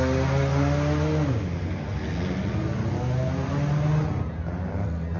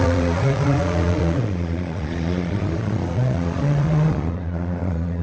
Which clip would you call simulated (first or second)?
second